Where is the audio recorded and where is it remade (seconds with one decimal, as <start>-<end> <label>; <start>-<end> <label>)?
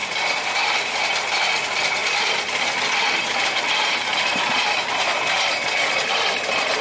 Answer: 0.0-6.8 recorded